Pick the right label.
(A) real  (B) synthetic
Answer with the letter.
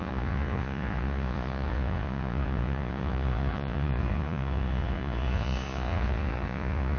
B